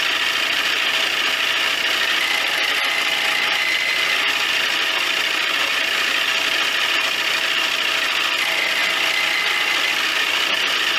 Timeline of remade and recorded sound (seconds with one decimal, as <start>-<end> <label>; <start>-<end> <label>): 0.0-11.0 recorded